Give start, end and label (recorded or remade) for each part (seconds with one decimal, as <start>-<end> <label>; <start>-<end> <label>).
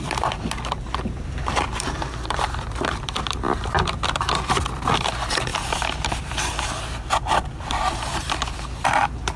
0.0-9.4 remade